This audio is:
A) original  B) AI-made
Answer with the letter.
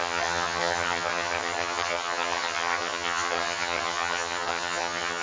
B